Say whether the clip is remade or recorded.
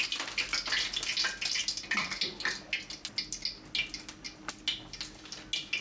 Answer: recorded